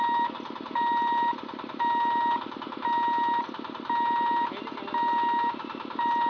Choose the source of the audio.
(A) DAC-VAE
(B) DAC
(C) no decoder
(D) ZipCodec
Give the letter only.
C